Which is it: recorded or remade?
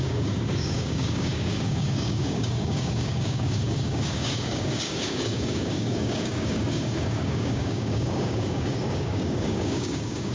remade